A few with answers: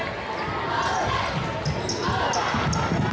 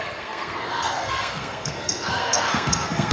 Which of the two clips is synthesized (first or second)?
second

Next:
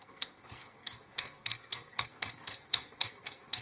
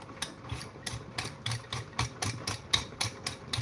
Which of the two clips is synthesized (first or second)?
first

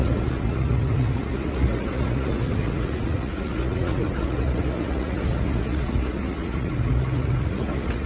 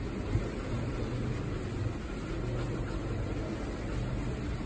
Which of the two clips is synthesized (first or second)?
first